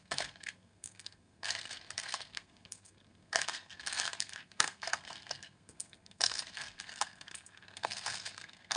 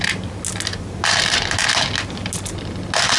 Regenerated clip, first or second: first